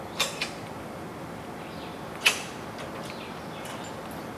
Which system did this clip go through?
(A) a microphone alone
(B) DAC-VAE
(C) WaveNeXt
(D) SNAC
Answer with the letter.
A